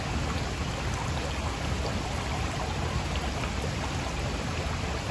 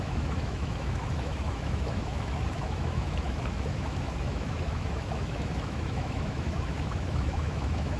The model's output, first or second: second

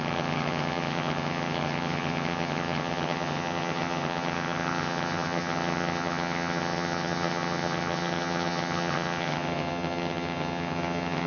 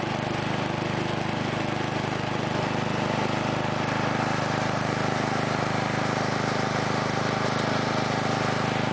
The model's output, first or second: first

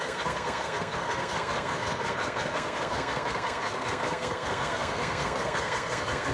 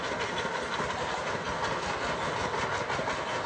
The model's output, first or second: first